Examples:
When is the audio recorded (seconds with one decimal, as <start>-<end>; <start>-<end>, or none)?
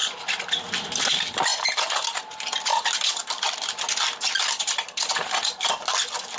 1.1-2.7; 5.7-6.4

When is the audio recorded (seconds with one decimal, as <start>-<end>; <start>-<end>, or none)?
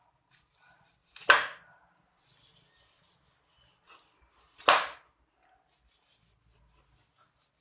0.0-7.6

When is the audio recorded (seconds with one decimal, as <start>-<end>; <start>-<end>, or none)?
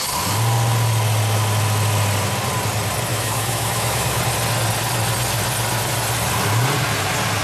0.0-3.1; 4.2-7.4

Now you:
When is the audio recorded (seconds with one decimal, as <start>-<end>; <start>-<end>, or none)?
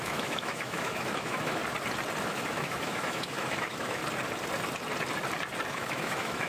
1.6-2.2; 4.0-5.7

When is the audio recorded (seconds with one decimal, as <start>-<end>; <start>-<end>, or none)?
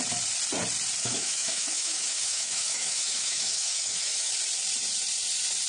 0.0-1.0; 4.3-5.7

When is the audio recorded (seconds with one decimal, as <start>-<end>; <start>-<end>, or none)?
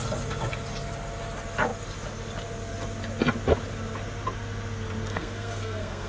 0.0-5.1